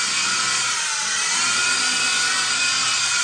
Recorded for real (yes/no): yes